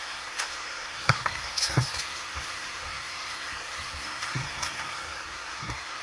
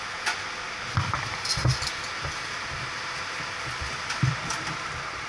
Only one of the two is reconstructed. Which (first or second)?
first